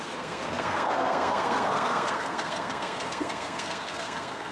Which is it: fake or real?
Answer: fake